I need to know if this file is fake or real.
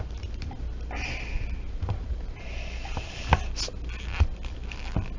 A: real